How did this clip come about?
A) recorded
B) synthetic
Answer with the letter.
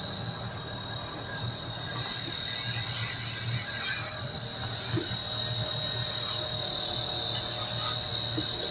A